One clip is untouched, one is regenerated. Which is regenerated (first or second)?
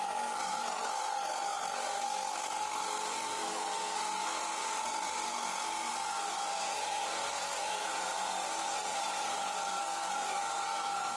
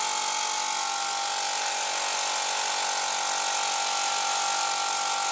first